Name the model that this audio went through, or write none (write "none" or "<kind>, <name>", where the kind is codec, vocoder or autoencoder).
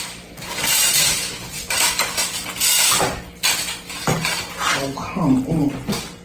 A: none